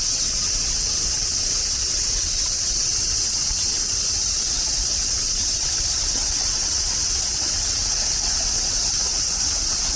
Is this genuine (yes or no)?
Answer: no